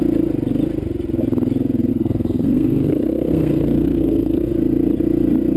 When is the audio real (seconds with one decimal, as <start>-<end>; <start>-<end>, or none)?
0.0-1.9; 4.5-5.6